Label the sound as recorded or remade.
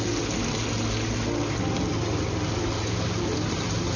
recorded